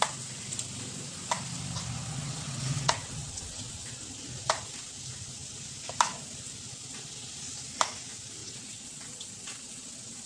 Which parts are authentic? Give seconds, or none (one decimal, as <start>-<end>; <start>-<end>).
0.0-2.0; 4.0-8.4

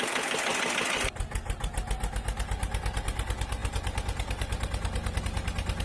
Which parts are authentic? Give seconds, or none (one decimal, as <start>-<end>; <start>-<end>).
0.0-5.8

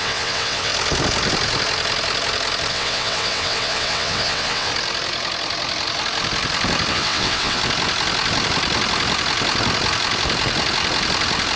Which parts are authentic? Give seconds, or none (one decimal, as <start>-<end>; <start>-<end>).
0.7-2.7; 4.7-6.9; 7.6-11.6

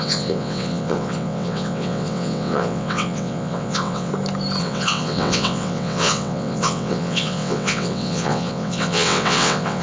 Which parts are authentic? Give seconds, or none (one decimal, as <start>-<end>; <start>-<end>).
4.1-4.6

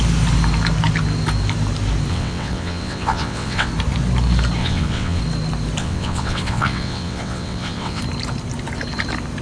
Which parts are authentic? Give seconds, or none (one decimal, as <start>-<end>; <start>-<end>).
0.0-2.1; 3.7-4.6; 5.2-5.8; 8.0-9.4

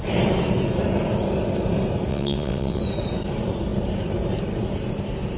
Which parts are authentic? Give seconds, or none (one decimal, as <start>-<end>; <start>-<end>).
0.0-2.1; 2.8-5.4

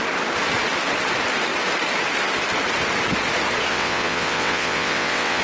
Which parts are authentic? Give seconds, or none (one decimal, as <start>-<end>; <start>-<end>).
0.0-3.7

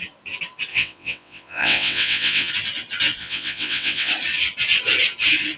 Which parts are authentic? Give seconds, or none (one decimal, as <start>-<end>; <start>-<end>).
0.0-0.7; 2.5-3.2; 4.1-5.6